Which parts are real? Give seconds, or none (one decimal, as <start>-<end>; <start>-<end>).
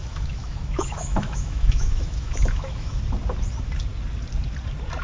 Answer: 3.0-5.0